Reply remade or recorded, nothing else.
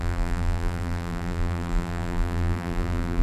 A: remade